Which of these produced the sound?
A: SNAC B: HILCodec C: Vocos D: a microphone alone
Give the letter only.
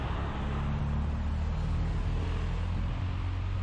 D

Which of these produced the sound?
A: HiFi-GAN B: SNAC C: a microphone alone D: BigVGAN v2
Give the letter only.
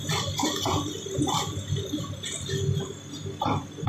D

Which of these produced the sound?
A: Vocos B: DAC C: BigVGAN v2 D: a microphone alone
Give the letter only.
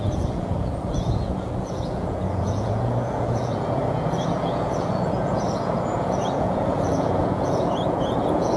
A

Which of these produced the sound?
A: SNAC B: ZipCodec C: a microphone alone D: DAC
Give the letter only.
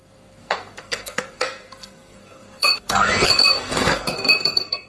A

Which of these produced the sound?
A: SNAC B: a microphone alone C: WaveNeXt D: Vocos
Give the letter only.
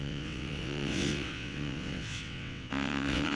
C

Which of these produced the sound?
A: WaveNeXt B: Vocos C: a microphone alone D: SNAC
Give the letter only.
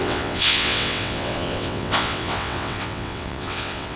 A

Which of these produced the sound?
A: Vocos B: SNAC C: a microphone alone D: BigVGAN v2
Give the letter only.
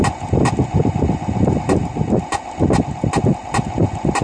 C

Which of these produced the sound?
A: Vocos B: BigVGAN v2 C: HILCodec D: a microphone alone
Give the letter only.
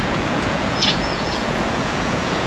A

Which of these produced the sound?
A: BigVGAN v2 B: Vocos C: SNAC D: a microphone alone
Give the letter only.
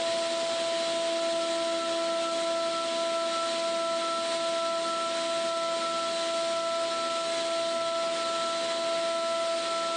D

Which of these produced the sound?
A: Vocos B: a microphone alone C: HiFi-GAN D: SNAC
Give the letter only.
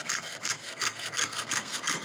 D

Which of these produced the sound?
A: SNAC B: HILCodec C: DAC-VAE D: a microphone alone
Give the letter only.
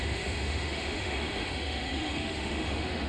C